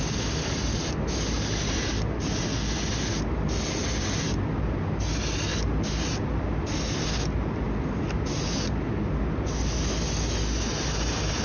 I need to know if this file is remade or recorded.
recorded